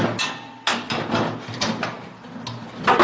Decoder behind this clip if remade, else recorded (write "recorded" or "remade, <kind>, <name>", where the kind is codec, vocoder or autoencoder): recorded